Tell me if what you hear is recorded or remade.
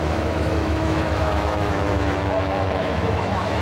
remade